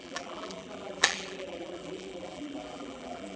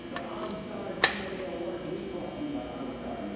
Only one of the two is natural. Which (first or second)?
second